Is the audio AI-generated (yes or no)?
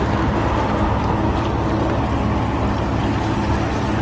no